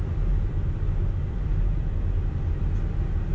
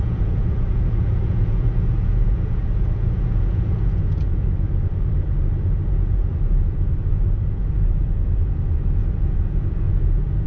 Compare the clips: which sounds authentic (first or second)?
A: first